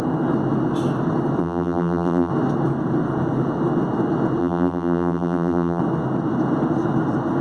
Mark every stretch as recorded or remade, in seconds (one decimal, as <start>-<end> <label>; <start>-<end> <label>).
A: 0.0-1.4 recorded; 1.4-2.3 remade; 2.3-4.4 recorded; 4.4-5.8 remade; 5.8-7.4 recorded

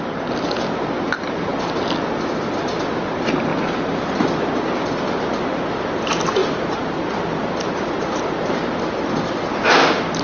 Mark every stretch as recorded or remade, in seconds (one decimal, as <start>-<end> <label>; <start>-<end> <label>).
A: 0.0-3.5 recorded; 3.5-4.3 remade; 4.3-6.4 recorded; 6.4-8.5 remade; 8.5-10.2 recorded

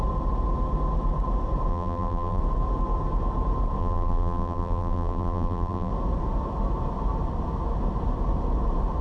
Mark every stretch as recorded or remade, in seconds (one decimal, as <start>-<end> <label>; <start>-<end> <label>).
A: 0.0-1.7 recorded; 1.7-2.4 remade; 2.4-3.8 recorded; 3.8-5.9 remade; 5.9-9.0 recorded

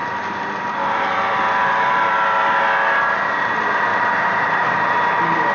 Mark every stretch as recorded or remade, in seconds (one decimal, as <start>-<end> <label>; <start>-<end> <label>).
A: 0.0-2.6 remade; 2.6-3.9 recorded; 3.9-4.8 remade; 4.8-5.5 recorded